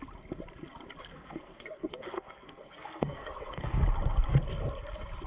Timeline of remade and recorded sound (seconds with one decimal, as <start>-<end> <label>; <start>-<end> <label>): 0.0-1.0 recorded; 1.0-3.8 remade; 3.8-5.3 recorded